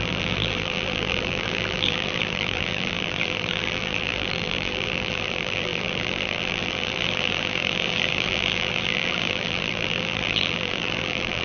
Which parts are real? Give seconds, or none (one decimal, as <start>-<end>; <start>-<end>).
none